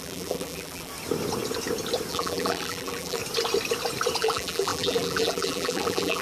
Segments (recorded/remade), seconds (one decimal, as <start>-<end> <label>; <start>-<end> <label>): 0.0-0.9 remade; 0.9-2.1 recorded; 2.1-3.2 remade; 3.2-4.2 recorded; 4.2-6.2 remade